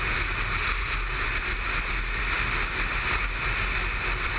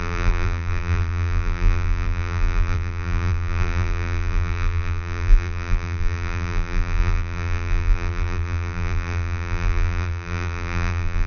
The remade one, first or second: second